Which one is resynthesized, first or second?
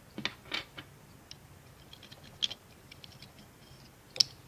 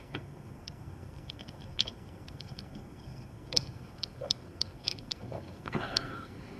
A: second